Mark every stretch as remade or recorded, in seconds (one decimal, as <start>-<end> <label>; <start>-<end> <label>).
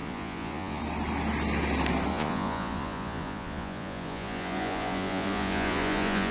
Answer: 0.0-0.8 remade; 0.8-2.1 recorded; 2.1-6.3 remade